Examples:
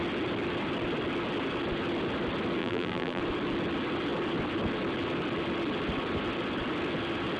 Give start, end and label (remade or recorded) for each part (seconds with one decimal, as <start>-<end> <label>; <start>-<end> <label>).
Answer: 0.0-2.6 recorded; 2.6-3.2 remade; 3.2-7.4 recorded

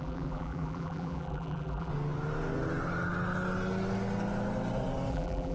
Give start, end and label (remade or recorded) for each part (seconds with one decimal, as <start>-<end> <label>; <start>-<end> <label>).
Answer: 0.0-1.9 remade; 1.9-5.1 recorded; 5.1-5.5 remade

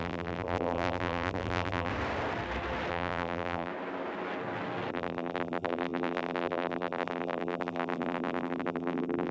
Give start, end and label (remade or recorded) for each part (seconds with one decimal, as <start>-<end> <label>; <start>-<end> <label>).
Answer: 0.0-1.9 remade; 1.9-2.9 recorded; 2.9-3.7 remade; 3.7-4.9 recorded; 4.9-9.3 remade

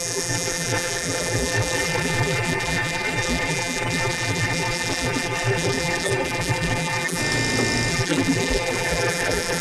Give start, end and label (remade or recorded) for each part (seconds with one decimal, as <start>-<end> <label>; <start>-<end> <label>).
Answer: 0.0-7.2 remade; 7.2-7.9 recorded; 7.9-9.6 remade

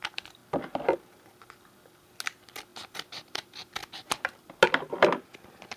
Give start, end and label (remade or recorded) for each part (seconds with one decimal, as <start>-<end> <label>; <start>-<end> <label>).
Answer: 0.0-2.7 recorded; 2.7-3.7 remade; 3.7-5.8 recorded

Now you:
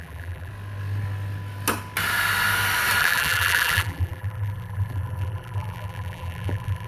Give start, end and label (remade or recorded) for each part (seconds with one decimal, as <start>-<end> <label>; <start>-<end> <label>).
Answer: 0.0-0.5 remade; 0.5-3.0 recorded; 3.0-6.9 remade

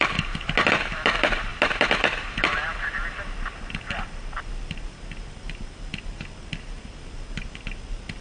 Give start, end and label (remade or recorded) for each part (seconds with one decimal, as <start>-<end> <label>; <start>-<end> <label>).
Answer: 0.0-8.2 recorded